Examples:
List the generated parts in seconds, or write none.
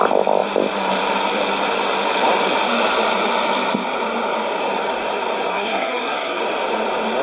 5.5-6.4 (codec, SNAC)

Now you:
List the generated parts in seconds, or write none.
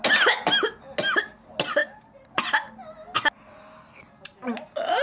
none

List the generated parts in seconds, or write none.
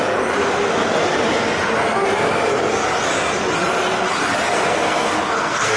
4.5-5.8 (codec, SNAC)